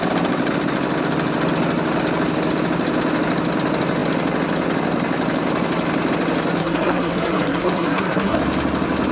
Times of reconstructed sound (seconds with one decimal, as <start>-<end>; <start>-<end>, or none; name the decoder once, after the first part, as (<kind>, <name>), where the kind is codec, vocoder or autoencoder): 6.6-8.4 (codec, SNAC)